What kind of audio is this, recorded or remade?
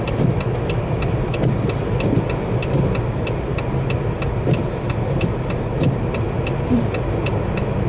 recorded